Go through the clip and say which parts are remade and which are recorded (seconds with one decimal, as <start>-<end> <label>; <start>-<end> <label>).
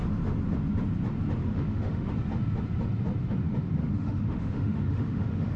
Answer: 0.0-1.4 recorded; 1.4-2.1 remade; 2.1-3.8 recorded; 3.8-5.6 remade